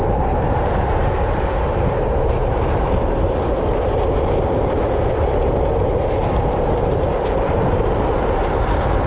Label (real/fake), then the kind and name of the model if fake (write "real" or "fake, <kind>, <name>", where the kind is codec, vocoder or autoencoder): fake, vocoder, BigVGAN v2